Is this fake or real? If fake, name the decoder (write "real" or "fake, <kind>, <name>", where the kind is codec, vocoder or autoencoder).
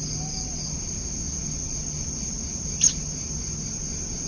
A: real